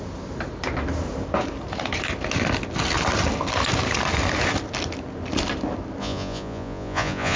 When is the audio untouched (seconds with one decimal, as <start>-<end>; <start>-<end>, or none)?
0.0-6.0